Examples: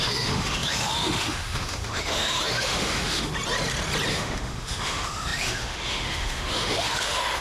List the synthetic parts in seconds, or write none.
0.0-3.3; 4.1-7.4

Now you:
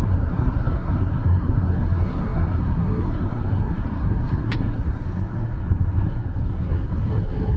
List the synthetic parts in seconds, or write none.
0.0-7.6

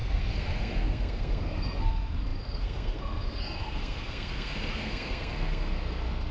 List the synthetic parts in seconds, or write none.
0.0-6.3

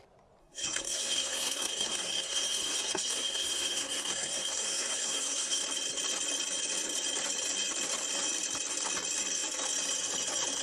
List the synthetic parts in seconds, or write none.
0.4-5.6

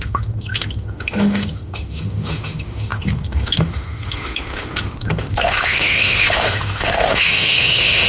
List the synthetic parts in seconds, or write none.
0.0-8.1